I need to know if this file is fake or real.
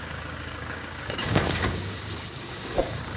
fake